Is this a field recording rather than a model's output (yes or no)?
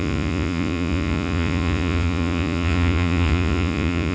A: no